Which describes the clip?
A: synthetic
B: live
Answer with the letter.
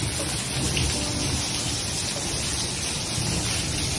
B